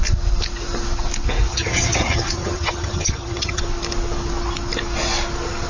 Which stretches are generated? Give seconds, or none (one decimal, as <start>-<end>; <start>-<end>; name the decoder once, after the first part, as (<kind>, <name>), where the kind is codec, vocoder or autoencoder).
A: 1.5-3.6 (vocoder, HiFi-GAN)